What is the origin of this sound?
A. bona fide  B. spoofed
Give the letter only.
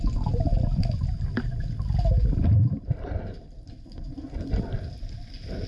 A